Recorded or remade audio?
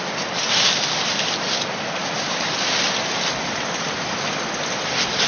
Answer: recorded